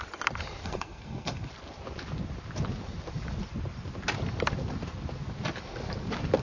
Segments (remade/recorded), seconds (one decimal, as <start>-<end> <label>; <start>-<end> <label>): 0.0-0.6 recorded; 0.6-1.5 remade; 1.5-6.4 recorded